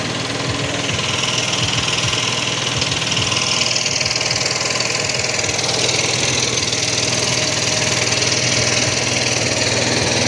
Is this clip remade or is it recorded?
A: recorded